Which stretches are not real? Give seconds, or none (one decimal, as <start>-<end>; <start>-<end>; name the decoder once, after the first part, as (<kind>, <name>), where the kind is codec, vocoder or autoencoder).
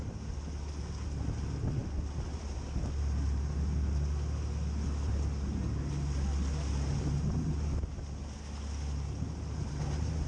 none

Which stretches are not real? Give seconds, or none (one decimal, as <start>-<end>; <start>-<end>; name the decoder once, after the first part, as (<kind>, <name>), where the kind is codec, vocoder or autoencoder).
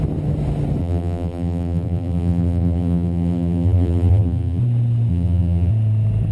0.8-4.6 (vocoder, BigVGAN v2); 5.1-5.7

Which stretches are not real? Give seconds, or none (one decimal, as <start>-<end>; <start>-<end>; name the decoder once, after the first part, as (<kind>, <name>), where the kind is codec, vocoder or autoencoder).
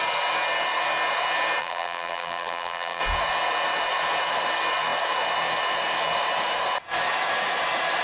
1.6-3.0 (vocoder, BigVGAN v2)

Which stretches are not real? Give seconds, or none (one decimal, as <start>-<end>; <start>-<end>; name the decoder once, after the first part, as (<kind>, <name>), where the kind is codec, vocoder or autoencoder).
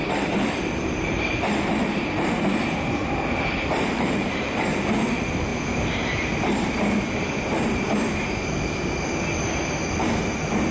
0.0-3.0 (vocoder, BigVGAN v2); 3.7-5.5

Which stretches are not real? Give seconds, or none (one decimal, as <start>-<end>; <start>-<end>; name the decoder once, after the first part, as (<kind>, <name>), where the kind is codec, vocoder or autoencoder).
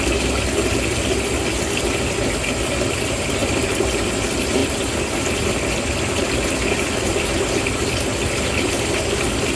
3.4-3.9 (vocoder, BigVGAN v2); 4.6-5.9